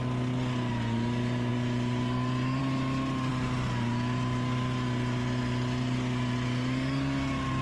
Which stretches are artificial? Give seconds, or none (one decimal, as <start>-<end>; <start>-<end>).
none